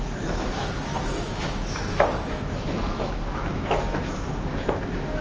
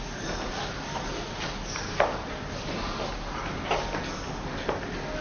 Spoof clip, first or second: first